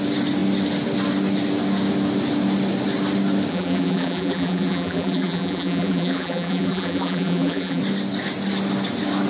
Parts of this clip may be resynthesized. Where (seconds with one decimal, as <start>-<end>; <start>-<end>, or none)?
3.5-7.8